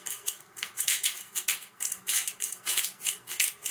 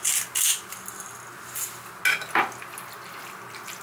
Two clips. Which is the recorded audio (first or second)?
second